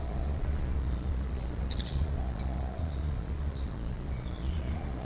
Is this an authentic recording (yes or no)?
no